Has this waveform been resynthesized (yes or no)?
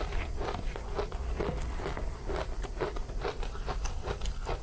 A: no